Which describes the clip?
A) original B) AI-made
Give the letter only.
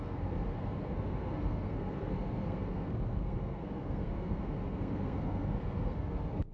B